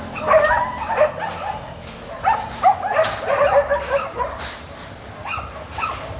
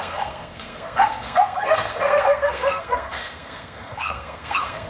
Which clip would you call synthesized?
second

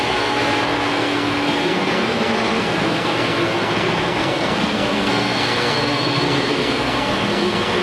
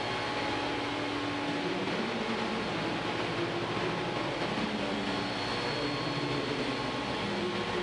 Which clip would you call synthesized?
first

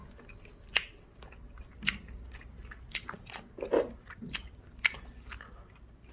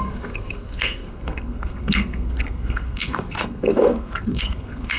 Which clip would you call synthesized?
second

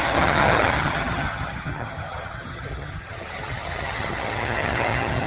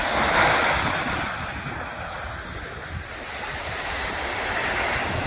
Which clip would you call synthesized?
first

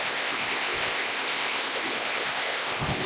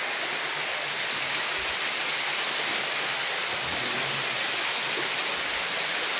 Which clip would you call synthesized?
first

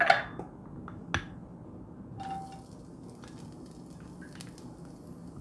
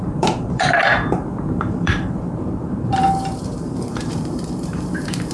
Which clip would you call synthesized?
second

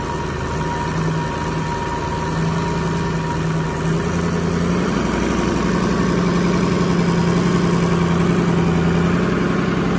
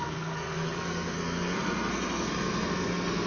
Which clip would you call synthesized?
second